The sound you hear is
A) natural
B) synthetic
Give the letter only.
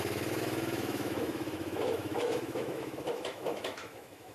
B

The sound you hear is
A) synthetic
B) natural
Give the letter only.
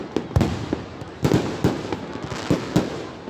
B